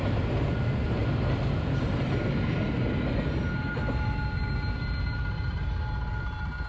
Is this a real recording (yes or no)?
yes